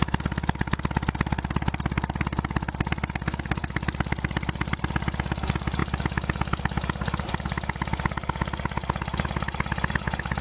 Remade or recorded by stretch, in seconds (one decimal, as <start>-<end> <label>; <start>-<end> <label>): 0.0-10.4 recorded